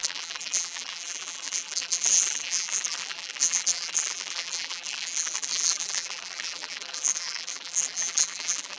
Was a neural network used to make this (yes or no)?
yes